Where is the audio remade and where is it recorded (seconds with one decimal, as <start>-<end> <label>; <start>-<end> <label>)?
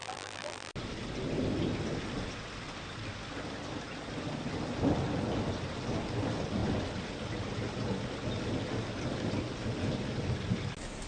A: 0.0-0.7 remade; 0.7-11.1 recorded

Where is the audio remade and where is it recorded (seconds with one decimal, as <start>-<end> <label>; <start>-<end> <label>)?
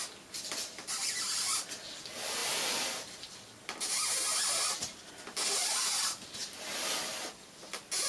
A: 0.0-8.1 recorded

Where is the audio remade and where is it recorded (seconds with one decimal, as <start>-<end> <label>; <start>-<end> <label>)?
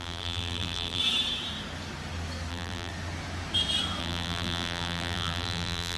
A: 0.0-1.0 remade; 1.0-2.5 recorded; 2.5-2.9 remade; 2.9-4.0 recorded; 4.0-6.0 remade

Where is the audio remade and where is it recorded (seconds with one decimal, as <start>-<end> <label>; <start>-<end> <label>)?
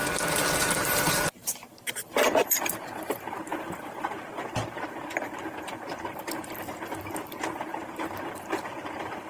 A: 0.0-0.6 recorded; 0.6-9.3 remade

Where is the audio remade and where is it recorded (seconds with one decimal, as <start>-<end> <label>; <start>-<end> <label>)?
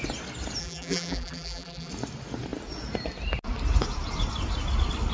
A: 0.0-0.6 recorded; 0.6-1.9 remade; 1.9-5.1 recorded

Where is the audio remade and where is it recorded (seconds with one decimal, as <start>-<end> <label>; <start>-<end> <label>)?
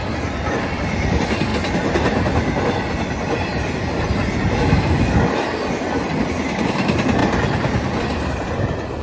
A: 0.0-1.5 remade; 1.5-4.0 recorded; 4.0-9.0 remade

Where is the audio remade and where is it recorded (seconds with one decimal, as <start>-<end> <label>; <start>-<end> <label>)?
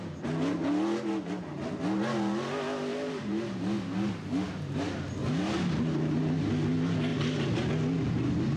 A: 0.0-2.9 recorded; 2.9-3.6 remade; 3.6-5.2 recorded; 5.2-6.5 remade; 6.5-7.1 recorded; 7.1-7.7 remade; 7.7-8.6 recorded